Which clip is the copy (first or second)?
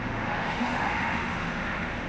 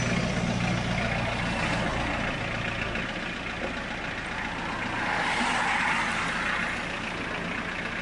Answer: first